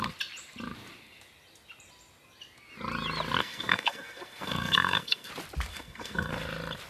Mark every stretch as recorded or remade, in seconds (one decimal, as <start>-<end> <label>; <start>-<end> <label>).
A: 0.0-3.4 recorded; 3.4-5.3 remade; 5.3-5.7 recorded; 5.7-6.3 remade; 6.3-6.9 recorded